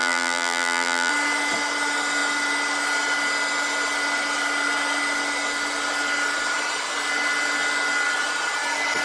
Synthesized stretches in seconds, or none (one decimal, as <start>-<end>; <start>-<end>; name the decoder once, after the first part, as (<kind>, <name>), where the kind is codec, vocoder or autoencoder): 0.0-1.1 (vocoder, BigVGAN v2)

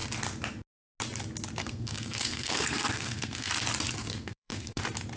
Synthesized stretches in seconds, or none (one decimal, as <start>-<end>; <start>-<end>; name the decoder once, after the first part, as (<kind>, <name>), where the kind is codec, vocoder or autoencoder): 1.6-3.5 (codec, SNAC); 4.0-4.8